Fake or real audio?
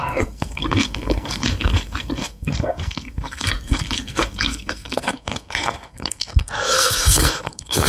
fake